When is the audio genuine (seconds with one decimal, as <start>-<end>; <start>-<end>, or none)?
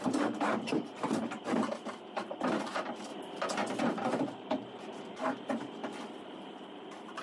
3.1-3.8; 5.8-6.5